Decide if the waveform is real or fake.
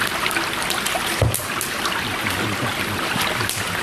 real